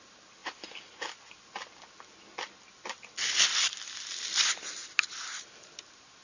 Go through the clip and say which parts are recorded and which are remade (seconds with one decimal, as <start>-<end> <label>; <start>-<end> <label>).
0.0-6.2 recorded